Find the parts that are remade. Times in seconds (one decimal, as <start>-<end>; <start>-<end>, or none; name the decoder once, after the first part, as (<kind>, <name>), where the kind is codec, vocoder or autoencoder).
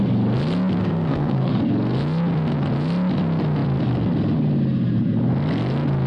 0.8-1.6 (codec, SNAC)